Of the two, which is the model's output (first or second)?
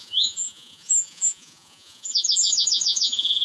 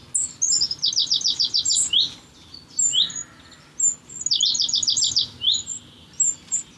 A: first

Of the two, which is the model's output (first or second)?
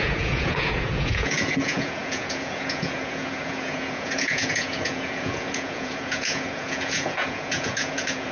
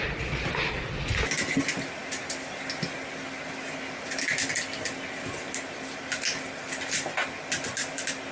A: first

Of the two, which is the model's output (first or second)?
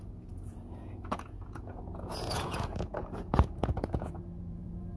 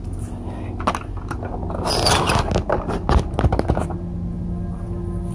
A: first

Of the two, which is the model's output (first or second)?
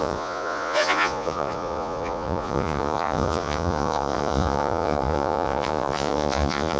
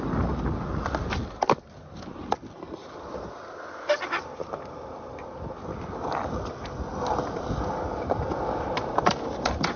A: first